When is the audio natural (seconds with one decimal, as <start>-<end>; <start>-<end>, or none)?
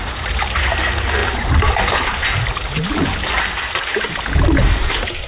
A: 0.0-1.2; 3.8-5.3